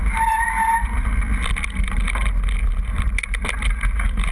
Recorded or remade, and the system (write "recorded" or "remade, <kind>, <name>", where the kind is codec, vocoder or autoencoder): recorded